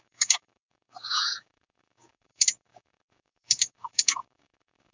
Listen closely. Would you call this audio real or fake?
fake